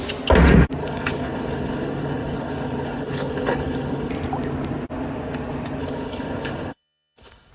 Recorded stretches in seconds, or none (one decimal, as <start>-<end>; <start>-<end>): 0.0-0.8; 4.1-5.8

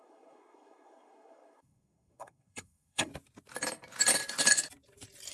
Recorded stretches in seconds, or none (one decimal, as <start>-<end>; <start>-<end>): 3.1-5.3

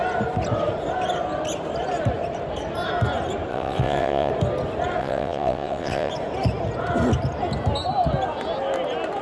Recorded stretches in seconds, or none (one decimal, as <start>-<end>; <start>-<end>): 0.0-3.5; 4.3-5.0; 6.1-9.2

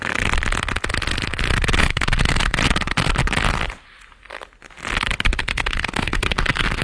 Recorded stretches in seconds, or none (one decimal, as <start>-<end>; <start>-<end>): 0.0-1.8; 2.6-5.4

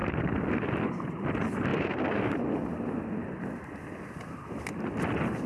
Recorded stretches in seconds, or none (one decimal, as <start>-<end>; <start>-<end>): 0.0-5.5

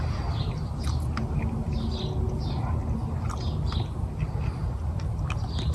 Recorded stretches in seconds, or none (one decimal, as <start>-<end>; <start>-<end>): 0.0-5.7

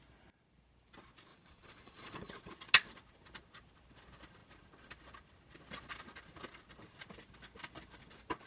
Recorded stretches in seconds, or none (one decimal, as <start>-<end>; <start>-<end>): 0.0-1.3; 2.3-8.5